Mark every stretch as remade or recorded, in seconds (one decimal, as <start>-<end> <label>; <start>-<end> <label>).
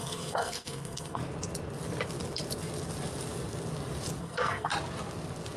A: 0.0-1.2 remade; 1.2-4.2 recorded; 4.2-4.7 remade; 4.7-5.6 recorded